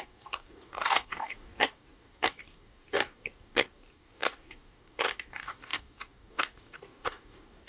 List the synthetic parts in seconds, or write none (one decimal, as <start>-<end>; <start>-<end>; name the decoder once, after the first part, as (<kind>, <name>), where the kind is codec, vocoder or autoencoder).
0.0-7.7 (codec, DAC)